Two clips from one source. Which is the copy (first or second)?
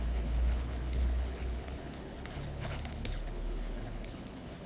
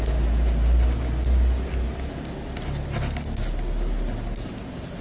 first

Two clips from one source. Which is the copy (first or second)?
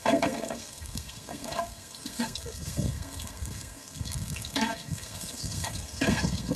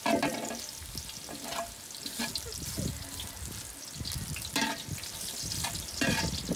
first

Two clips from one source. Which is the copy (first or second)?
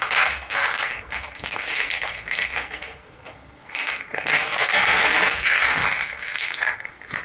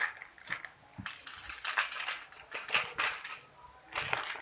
first